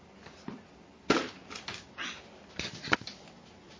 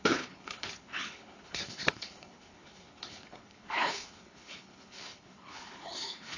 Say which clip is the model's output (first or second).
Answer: second